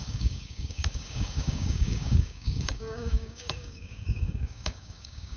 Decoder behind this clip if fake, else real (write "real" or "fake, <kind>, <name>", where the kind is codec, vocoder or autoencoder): fake, codec, DAC